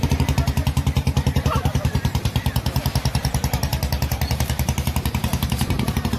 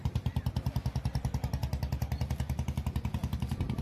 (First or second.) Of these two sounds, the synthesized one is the first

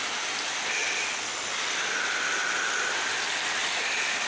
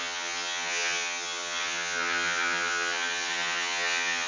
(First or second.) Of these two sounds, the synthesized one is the second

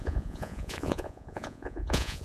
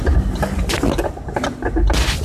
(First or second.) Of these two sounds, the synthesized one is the first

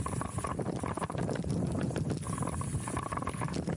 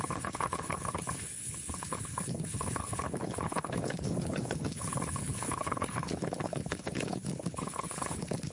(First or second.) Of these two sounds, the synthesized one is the second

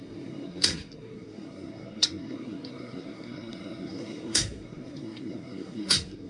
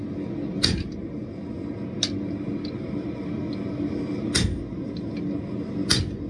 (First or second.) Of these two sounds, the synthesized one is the first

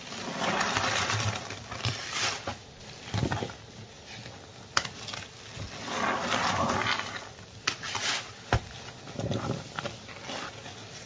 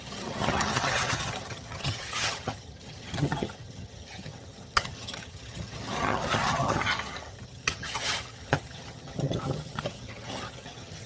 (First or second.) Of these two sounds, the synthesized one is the second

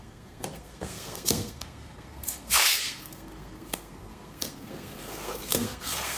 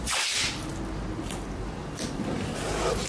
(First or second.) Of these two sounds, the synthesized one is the first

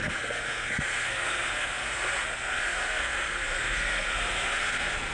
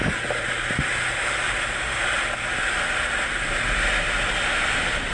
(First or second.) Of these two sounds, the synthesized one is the first